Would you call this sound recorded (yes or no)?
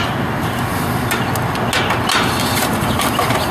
yes